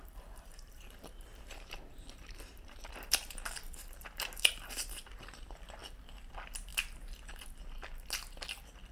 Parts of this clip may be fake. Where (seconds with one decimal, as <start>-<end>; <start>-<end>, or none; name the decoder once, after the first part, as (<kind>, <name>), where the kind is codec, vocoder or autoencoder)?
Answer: 0.0-6.7 (vocoder, BigVGAN v2)